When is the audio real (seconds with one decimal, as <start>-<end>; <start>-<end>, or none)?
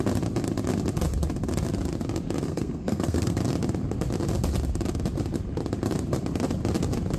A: 0.0-2.4; 3.4-7.2